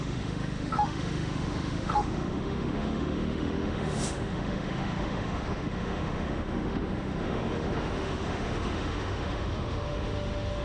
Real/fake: fake